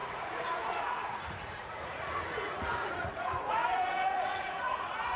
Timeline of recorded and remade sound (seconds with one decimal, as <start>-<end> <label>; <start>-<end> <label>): 0.0-5.2 remade